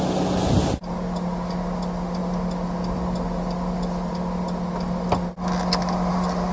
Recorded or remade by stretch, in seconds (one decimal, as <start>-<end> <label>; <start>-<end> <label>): 0.0-6.5 recorded